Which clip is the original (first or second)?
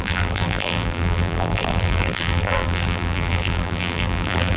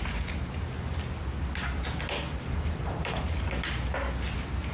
second